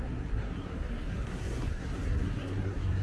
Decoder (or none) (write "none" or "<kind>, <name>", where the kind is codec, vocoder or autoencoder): codec, SNAC